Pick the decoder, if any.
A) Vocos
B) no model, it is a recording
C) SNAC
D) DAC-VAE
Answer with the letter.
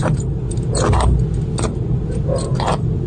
B